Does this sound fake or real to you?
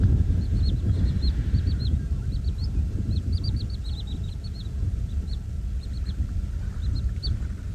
real